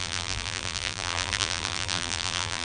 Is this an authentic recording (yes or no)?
no